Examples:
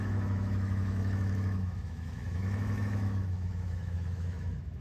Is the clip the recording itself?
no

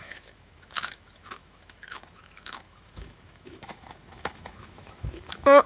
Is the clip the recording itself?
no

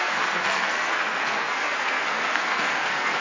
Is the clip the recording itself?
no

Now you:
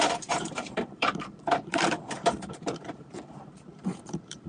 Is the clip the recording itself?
no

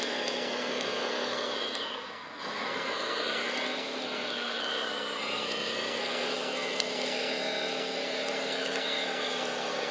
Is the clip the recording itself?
no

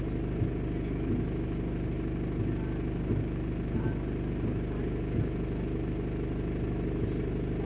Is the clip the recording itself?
yes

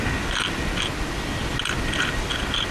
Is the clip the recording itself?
yes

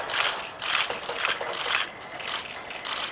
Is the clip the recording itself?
yes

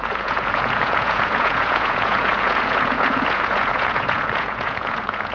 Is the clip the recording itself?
no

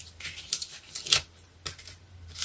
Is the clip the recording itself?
yes